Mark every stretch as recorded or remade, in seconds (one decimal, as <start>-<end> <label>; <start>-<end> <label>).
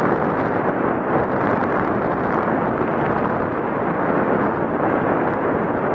0.0-5.9 recorded